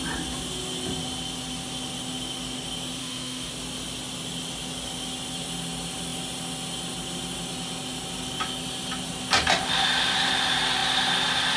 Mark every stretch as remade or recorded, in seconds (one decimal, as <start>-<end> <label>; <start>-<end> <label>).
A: 0.0-3.0 recorded; 3.0-3.5 remade; 3.5-11.6 recorded

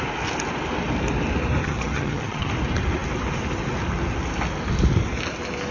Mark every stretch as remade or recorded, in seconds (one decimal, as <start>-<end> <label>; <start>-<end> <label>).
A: 0.0-1.6 recorded; 1.6-2.5 remade; 2.5-5.7 recorded

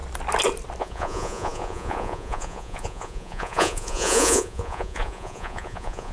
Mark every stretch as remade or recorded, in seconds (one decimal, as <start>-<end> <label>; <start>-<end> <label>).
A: 0.0-0.8 recorded; 0.8-6.1 remade

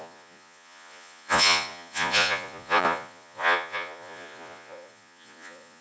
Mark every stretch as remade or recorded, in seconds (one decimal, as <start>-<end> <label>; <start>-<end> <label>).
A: 0.0-5.8 remade